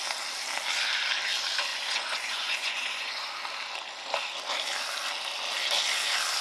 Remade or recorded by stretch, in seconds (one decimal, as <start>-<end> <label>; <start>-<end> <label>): 0.0-1.7 recorded; 1.7-3.3 remade; 3.3-6.4 recorded